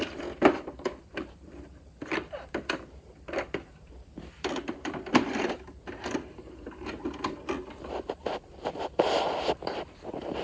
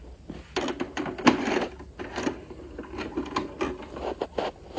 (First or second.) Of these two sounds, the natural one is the second